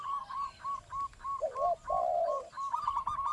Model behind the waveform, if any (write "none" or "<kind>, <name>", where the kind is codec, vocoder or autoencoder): none